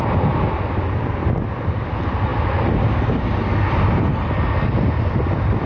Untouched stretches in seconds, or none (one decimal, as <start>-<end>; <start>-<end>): 0.0-5.7